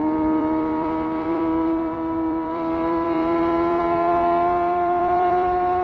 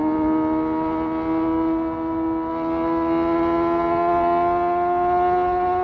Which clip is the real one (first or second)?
second